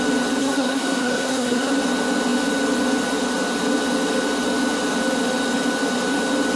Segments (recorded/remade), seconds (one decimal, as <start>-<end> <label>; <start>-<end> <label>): 0.0-0.4 recorded; 0.4-1.7 remade; 1.7-6.6 recorded

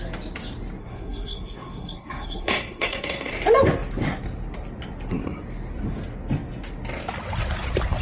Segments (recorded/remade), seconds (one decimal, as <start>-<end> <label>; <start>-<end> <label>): 0.0-0.8 recorded; 0.8-3.3 remade; 3.3-8.0 recorded

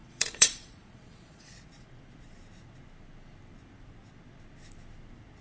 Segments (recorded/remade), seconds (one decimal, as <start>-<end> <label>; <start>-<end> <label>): 0.0-2.0 remade; 2.0-5.4 recorded

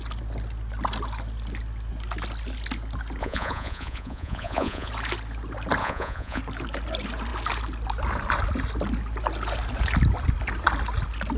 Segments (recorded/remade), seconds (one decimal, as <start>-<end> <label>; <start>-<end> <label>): 0.0-3.2 recorded; 3.2-4.9 remade; 4.9-5.8 recorded; 5.8-6.4 remade; 6.4-11.4 recorded